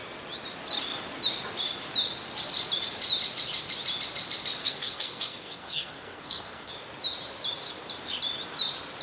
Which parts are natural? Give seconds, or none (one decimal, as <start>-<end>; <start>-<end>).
0.0-4.6; 6.7-9.0